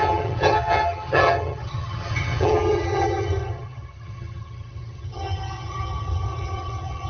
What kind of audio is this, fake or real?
fake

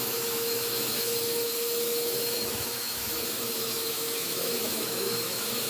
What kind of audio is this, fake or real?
fake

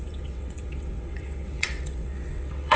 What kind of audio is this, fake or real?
fake